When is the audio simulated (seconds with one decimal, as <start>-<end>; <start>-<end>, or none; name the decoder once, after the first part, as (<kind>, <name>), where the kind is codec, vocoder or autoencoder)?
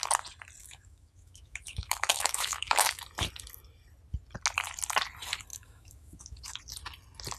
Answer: 0.6-3.0 (autoencoder, DAC-VAE); 5.5-6.6